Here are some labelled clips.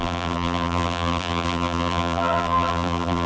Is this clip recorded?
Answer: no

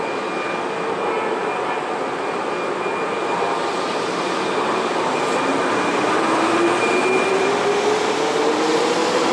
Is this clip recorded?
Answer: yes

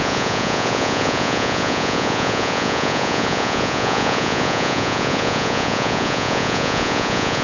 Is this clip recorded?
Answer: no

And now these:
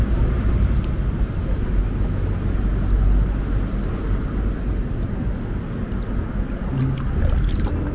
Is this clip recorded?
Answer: yes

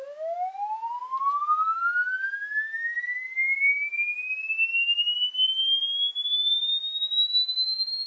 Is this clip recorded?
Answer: yes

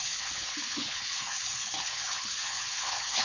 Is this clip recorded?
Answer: no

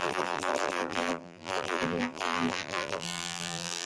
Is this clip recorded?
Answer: no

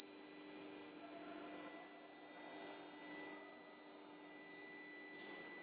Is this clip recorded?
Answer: yes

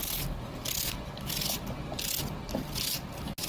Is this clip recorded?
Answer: yes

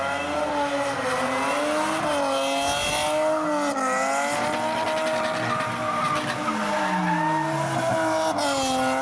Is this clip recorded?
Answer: yes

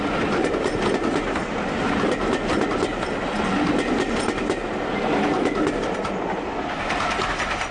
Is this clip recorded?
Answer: yes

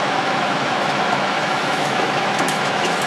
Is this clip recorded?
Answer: no